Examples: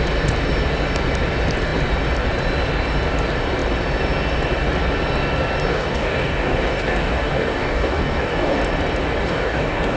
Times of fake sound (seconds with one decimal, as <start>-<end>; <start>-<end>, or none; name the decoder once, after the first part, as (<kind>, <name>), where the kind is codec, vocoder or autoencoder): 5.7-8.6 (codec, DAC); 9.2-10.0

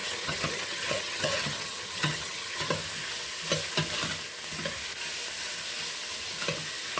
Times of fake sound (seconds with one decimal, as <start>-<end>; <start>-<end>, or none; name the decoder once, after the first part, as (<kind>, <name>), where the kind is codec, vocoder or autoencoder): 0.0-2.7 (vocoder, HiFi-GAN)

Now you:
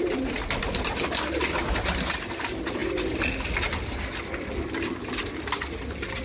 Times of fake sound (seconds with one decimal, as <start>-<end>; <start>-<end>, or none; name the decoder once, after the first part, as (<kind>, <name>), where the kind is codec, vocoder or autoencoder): none

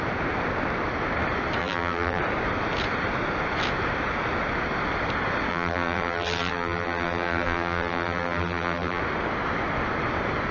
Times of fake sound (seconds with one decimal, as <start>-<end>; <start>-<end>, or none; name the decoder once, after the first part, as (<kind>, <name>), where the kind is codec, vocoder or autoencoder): 1.6-2.2 (vocoder, BigVGAN v2); 5.5-9.0